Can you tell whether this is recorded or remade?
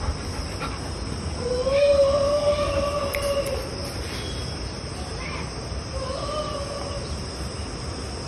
recorded